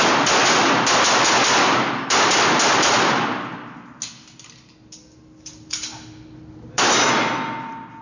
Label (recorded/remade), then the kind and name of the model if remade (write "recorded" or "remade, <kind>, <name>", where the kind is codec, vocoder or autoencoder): recorded